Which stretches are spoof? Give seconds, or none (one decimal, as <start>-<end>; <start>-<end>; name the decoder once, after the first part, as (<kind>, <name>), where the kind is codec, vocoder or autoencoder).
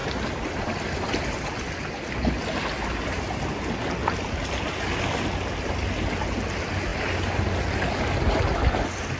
none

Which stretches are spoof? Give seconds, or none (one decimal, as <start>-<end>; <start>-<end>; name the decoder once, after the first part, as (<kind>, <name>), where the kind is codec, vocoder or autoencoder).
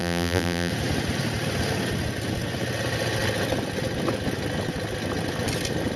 0.0-0.7 (vocoder, BigVGAN v2)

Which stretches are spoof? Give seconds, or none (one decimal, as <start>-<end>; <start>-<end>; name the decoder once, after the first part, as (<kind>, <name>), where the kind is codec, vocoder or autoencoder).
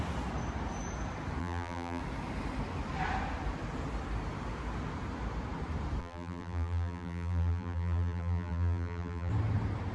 1.4-2.0 (vocoder, BigVGAN v2); 6.0-9.3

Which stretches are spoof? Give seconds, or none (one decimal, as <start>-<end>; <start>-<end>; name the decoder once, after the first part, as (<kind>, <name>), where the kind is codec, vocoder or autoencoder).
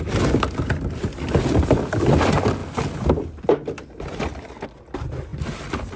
none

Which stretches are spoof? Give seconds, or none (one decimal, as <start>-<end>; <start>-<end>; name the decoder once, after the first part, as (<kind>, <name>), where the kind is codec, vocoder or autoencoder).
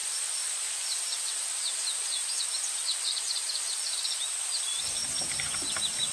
0.0-3.7 (vocoder, BigVGAN v2); 5.0-5.5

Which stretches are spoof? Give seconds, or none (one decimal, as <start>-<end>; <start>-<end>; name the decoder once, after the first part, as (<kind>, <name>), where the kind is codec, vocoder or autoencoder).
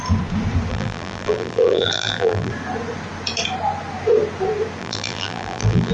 0.7-2.5 (vocoder, BigVGAN v2); 4.8-5.9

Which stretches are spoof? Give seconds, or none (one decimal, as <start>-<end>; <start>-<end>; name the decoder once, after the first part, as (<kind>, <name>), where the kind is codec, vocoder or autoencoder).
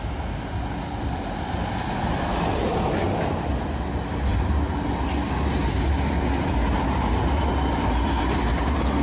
none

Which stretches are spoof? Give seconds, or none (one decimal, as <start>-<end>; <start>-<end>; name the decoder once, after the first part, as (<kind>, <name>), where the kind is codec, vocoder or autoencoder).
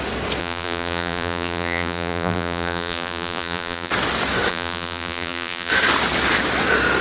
0.4-3.9 (vocoder, BigVGAN v2); 4.5-5.7